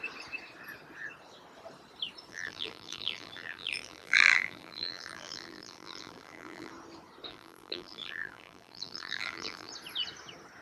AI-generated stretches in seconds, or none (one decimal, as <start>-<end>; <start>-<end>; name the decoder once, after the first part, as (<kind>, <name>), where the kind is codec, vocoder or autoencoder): 2.3-6.7 (vocoder, BigVGAN v2); 7.3-9.7